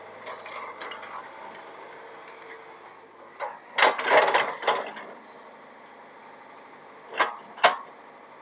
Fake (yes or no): no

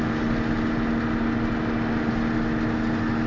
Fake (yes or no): no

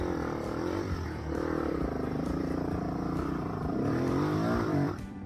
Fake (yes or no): yes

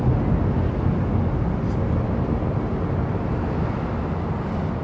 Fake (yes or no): no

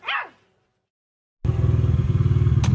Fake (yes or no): no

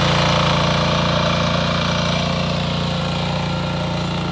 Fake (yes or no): no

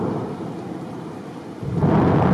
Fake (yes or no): no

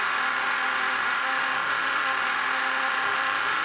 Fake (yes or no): yes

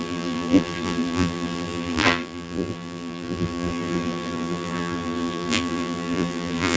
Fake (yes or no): yes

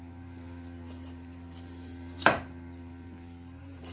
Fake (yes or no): yes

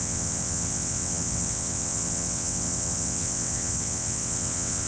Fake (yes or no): yes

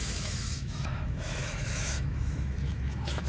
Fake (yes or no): yes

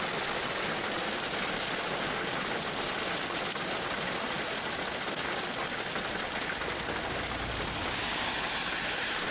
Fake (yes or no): no